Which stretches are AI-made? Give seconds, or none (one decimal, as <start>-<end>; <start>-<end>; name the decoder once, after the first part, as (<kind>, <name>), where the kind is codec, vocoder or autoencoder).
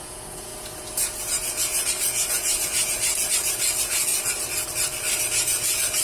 0.0-4.1 (vocoder, Vocos); 5.2-6.0